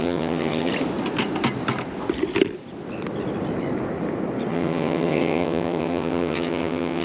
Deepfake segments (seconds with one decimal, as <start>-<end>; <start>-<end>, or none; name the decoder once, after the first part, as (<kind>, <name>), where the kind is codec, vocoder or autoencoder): 0.0-0.7 (vocoder, HiFi-GAN); 4.5-7.0